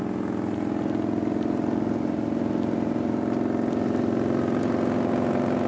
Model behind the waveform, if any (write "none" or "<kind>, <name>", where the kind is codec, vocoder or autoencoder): none